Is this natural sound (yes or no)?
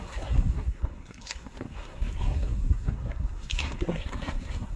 no